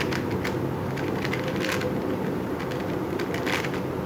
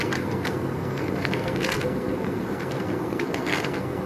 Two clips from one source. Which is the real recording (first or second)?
first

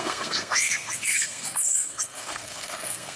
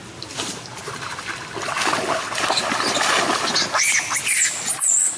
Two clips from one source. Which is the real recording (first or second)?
second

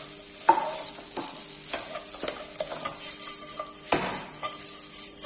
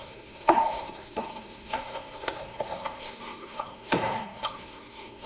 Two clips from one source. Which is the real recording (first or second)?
first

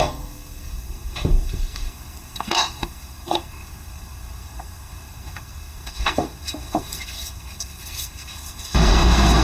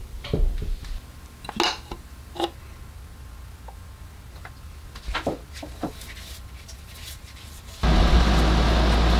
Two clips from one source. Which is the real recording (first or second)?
second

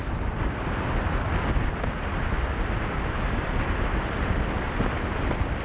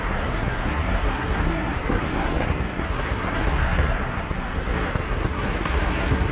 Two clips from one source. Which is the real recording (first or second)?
first